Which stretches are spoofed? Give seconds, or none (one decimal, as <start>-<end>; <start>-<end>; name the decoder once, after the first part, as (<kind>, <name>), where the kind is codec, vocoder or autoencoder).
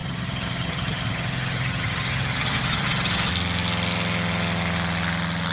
0.0-3.3 (vocoder, HiFi-GAN)